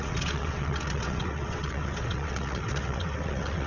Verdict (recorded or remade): remade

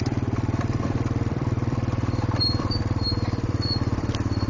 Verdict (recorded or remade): remade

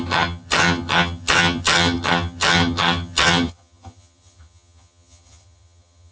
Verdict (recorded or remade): remade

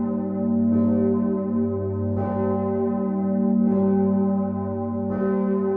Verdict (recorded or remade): recorded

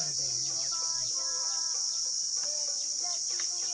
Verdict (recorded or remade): recorded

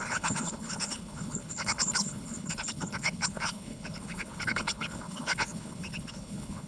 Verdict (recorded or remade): remade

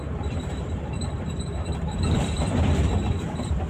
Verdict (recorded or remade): remade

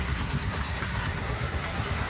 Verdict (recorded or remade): remade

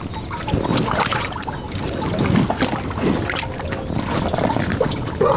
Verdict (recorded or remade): recorded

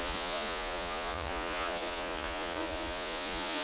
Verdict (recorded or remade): remade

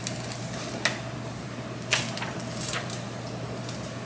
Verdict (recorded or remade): recorded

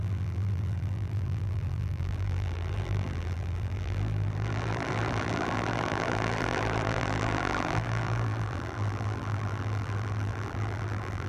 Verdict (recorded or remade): remade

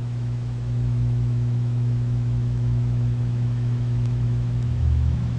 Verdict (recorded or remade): remade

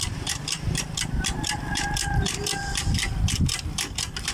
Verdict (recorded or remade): recorded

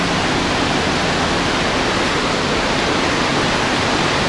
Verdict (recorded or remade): recorded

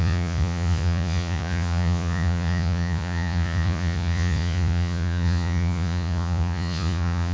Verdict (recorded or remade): remade